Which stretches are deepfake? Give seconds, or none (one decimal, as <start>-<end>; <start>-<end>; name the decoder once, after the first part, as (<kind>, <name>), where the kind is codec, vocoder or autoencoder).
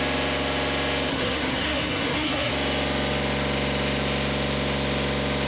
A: 1.1-2.5 (codec, SNAC)